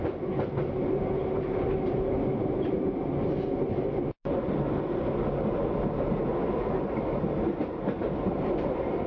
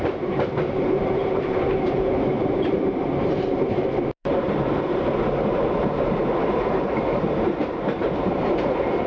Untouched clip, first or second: first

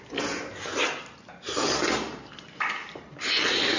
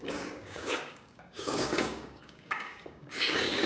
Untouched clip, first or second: first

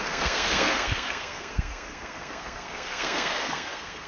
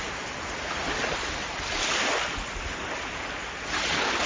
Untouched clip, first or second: second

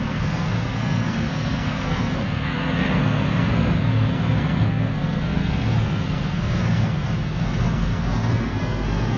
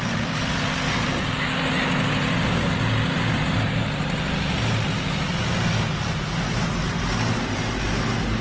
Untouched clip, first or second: second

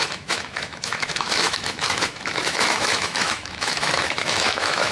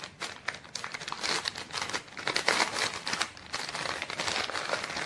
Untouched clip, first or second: second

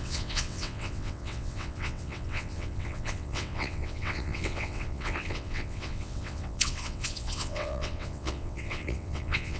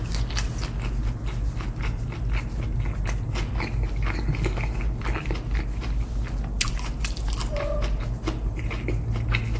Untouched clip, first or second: second